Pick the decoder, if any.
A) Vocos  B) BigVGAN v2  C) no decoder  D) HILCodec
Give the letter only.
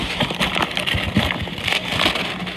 B